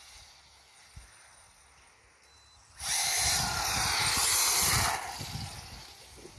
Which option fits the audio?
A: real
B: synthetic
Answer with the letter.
A